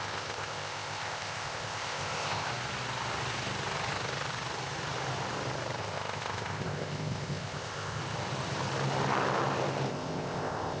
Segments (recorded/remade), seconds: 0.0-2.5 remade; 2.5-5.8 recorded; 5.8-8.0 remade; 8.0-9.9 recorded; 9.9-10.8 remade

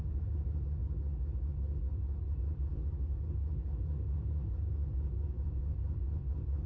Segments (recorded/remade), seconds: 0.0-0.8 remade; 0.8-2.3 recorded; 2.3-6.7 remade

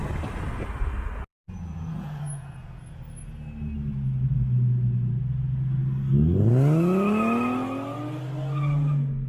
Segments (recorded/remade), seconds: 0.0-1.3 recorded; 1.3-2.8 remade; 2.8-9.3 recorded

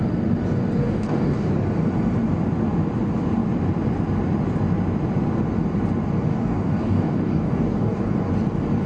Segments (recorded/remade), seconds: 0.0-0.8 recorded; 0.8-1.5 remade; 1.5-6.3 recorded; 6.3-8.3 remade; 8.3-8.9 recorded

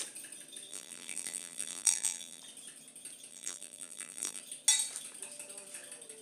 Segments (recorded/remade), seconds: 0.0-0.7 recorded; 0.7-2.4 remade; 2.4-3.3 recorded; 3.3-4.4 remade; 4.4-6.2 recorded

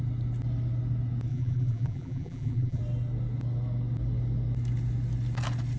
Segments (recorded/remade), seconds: 0.0-1.3 recorded; 1.3-2.8 remade; 2.8-5.8 recorded

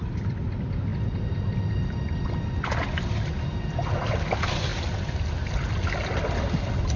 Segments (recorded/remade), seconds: 0.0-7.0 recorded